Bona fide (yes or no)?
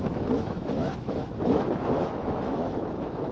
no